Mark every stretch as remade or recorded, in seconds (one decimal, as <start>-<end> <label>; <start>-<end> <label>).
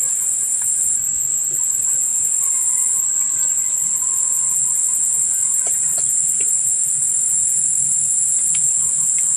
0.0-9.4 recorded